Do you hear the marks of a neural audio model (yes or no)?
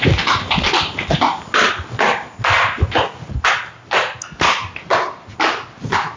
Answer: no